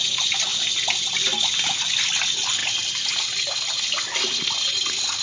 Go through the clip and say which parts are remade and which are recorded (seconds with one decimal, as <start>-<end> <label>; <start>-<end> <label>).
0.0-5.2 recorded